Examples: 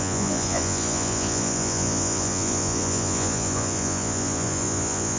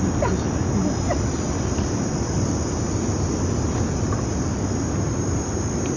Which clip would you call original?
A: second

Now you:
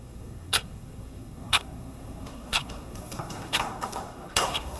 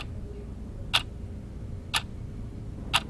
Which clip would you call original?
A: second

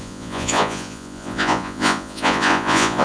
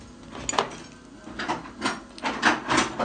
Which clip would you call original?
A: second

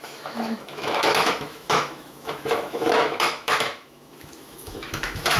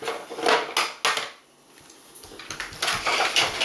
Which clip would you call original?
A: second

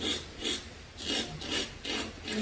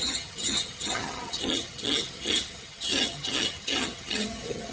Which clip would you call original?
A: first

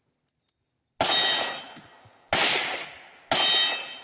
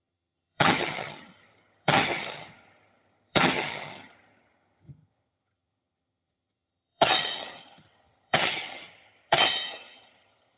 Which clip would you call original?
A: first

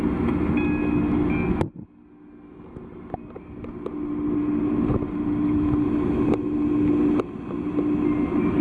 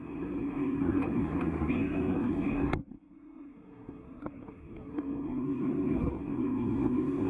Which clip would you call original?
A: first